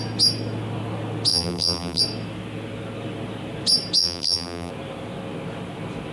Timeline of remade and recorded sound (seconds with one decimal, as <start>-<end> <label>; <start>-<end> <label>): 0.0-1.3 recorded; 1.3-2.0 remade; 2.0-4.0 recorded; 4.0-4.7 remade; 4.7-6.1 recorded